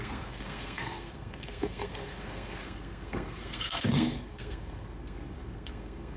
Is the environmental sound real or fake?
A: fake